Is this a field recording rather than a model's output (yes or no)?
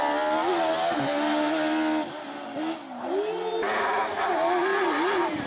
yes